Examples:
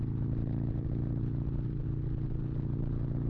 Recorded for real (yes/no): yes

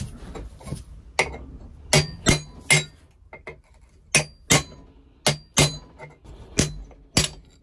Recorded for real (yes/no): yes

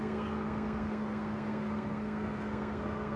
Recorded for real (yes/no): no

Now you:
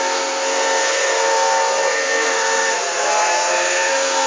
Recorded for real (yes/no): no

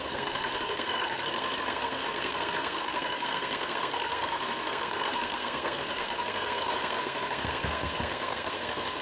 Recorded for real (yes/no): no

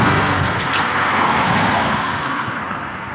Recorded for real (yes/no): no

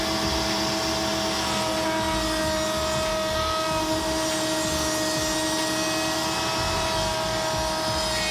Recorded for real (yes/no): yes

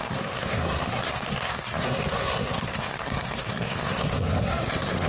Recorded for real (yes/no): no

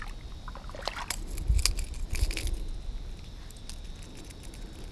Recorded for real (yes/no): yes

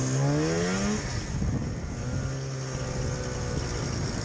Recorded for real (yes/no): yes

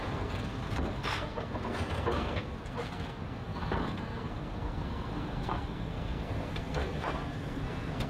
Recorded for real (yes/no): no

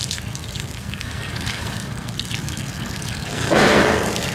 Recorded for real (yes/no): no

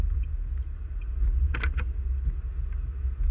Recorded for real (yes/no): yes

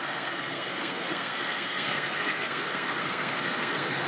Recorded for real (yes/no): no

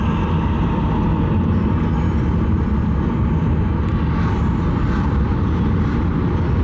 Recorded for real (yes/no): yes